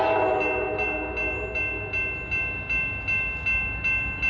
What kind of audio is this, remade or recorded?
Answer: recorded